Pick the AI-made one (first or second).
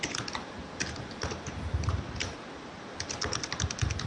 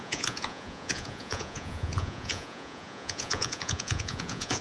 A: second